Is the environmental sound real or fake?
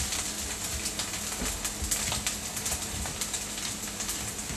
real